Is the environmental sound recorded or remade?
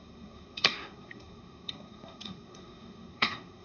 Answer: remade